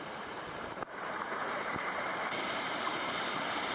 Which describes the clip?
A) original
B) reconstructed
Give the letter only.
B